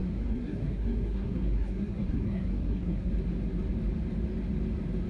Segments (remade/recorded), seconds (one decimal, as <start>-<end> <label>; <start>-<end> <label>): 0.0-3.1 remade; 3.1-5.1 recorded